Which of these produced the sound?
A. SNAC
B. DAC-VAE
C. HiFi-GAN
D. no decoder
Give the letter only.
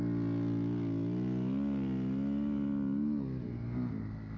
D